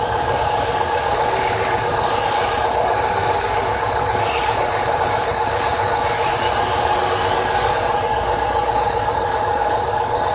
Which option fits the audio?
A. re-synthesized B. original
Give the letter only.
A